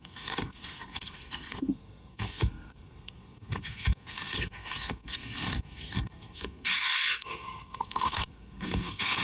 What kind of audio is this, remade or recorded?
remade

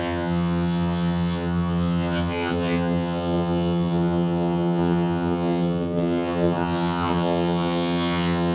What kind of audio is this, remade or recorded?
remade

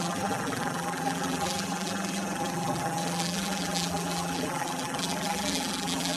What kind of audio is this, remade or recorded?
remade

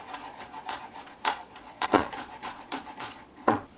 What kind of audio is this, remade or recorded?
remade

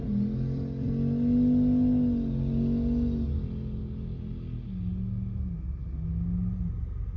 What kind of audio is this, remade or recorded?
recorded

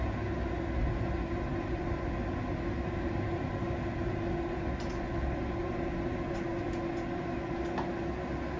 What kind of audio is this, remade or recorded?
recorded